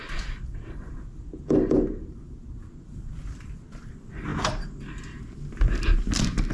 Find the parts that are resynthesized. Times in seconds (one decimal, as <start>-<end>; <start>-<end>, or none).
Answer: 0.0-3.9; 4.3-5.2